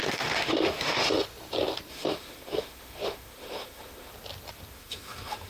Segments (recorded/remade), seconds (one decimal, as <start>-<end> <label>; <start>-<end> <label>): 0.0-1.1 remade; 1.1-1.9 recorded; 1.9-4.1 remade; 4.1-4.7 recorded; 4.7-5.5 remade